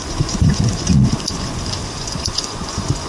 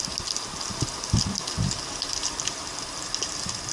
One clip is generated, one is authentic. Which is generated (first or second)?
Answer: first